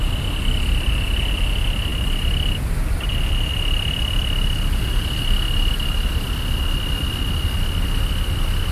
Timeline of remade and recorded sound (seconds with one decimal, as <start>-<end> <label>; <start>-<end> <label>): 0.0-8.7 recorded